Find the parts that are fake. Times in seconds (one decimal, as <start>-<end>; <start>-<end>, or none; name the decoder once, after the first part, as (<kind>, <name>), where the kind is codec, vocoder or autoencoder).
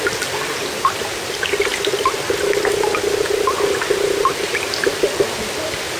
none